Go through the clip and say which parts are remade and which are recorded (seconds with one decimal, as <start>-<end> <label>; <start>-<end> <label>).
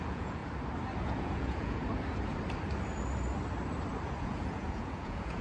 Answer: 0.0-0.4 remade; 0.4-1.2 recorded; 1.2-1.8 remade; 1.8-4.2 recorded; 4.2-5.4 remade